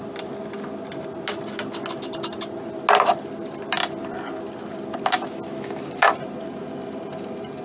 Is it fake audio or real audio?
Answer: real